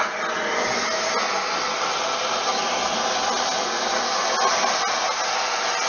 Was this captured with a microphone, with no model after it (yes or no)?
yes